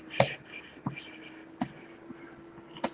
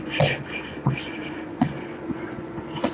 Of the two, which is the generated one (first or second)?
second